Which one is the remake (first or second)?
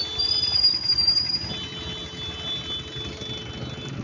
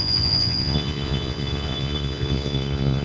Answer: second